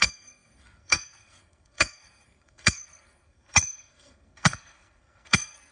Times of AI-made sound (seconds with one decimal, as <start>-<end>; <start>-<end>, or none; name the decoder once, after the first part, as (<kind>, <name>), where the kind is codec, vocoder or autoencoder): 0.0-5.7 (codec, SNAC)